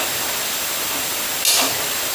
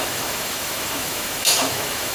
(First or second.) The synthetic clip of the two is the second